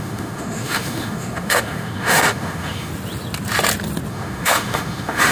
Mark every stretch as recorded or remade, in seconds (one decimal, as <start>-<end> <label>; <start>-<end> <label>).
0.0-2.9 remade; 2.9-4.1 recorded; 4.1-5.3 remade